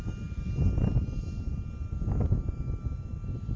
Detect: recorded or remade recorded